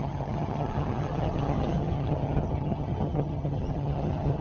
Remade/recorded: remade